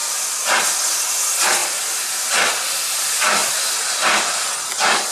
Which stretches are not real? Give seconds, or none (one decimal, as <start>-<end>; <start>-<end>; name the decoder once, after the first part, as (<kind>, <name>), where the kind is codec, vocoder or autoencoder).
none